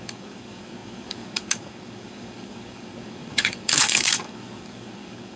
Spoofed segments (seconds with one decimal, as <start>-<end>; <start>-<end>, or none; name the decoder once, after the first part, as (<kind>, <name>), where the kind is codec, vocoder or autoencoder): 0.0-5.4 (codec, DAC)